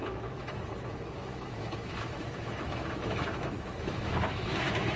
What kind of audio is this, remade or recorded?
remade